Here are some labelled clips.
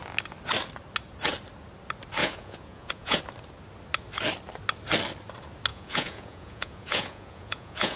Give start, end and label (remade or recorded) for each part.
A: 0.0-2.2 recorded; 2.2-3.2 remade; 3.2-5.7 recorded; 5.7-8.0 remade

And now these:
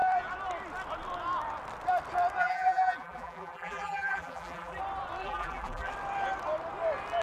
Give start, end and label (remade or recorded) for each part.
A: 0.0-2.4 recorded; 2.4-4.8 remade; 4.8-5.2 recorded; 5.2-5.9 remade; 5.9-7.2 recorded

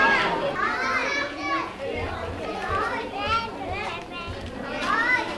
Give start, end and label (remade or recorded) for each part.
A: 0.0-1.0 recorded; 1.0-1.8 remade; 1.8-5.4 recorded